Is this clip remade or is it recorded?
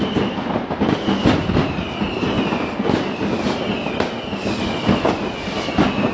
recorded